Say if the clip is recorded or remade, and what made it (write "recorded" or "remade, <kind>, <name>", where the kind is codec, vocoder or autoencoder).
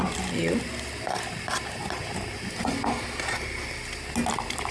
recorded